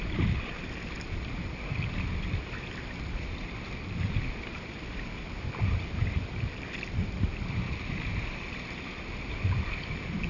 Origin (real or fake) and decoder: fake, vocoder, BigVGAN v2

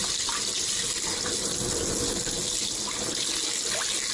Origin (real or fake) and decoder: real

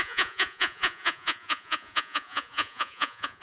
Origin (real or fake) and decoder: fake, vocoder, Vocos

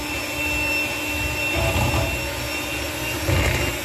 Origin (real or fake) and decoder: real